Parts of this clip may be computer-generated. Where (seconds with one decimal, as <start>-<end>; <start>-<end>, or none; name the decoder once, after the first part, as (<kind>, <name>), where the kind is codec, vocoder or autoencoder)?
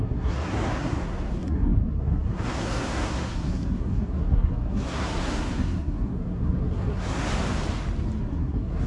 0.0-7.3 (codec, SNAC); 8.2-8.9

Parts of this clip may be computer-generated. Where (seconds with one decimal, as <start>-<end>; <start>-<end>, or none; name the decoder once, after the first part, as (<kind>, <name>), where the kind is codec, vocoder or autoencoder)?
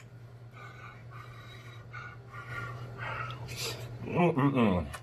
1.0-2.0 (vocoder, BigVGAN v2); 2.5-4.2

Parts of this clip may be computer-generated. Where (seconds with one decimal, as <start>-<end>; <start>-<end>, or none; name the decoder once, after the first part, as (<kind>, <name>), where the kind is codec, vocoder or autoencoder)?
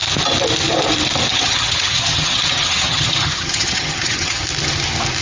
1.3-4.4 (vocoder, HiFi-GAN)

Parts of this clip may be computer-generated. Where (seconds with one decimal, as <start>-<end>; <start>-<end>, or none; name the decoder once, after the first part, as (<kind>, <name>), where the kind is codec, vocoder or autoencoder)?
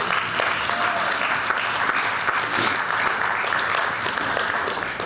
none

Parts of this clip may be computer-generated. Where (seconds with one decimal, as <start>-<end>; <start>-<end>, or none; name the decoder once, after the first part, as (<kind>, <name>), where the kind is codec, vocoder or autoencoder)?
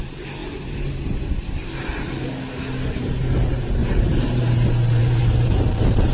3.8-4.5 (vocoder, BigVGAN v2); 5.0-6.1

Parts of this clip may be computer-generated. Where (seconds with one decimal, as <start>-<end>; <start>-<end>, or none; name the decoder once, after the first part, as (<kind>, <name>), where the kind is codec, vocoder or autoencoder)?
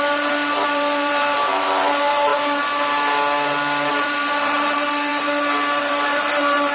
0.0-2.3 (vocoder, BigVGAN v2); 3.9-5.1; 5.8-6.7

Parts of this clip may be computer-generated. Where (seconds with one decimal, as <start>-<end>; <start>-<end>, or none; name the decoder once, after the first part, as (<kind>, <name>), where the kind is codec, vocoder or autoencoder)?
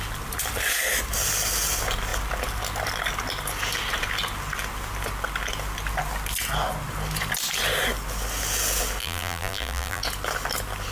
9.0-10.0 (vocoder, BigVGAN v2)